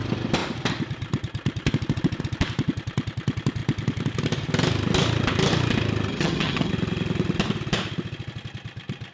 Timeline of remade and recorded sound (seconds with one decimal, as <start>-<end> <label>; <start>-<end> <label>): 0.0-6.1 recorded; 6.1-6.7 remade; 6.7-9.1 recorded